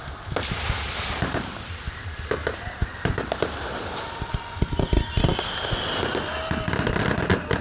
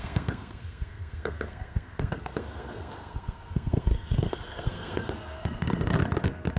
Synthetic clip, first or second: second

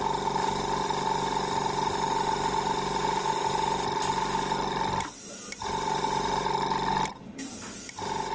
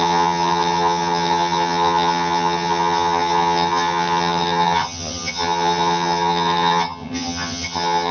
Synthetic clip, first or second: second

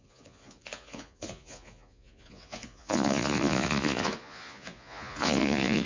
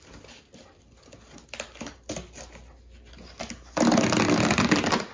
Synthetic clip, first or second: first